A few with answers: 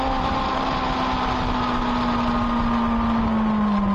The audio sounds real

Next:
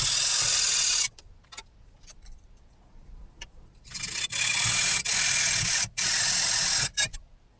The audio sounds real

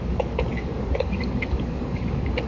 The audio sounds fake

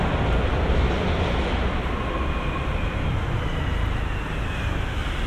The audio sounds real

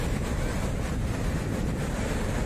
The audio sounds real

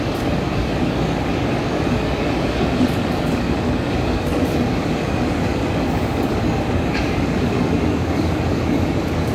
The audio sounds fake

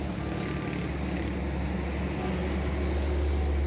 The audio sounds real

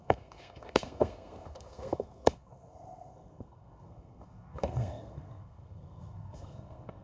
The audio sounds fake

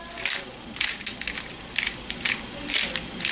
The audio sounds real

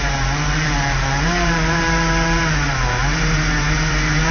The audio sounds fake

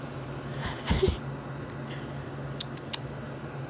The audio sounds real